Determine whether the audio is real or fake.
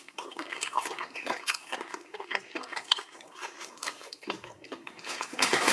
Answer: fake